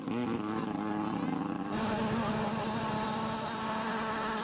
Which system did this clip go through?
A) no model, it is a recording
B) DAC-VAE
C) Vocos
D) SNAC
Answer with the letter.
A